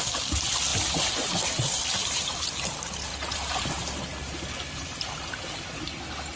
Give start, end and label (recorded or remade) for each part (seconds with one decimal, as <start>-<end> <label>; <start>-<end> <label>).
0.0-0.7 recorded; 0.7-2.4 remade; 2.4-6.4 recorded